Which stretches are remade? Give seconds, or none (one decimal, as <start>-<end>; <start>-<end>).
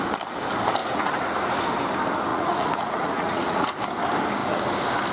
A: 0.8-1.6; 2.3-3.8